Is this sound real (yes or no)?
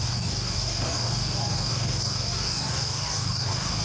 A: no